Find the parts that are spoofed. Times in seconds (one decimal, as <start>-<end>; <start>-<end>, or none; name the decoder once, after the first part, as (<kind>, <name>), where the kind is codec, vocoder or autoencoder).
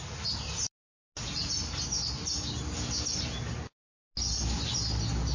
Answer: none